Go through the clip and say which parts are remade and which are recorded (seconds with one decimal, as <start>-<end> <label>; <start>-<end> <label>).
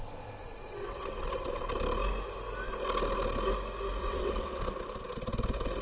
0.0-0.4 recorded; 0.4-1.7 remade; 1.7-4.0 recorded; 4.0-4.6 remade; 4.6-5.8 recorded